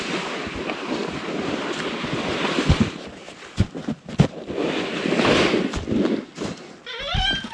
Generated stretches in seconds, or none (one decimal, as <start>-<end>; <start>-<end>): none